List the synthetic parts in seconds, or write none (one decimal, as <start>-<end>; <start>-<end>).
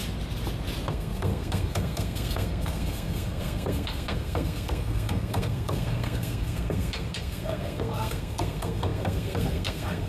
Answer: 0.9-10.1